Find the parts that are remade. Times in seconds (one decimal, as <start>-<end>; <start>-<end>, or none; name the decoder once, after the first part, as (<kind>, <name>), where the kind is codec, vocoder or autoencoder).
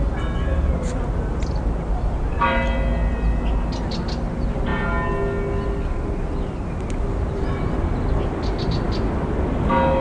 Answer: none